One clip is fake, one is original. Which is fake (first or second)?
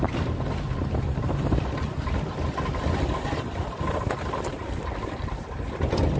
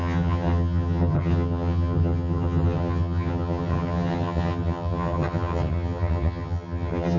second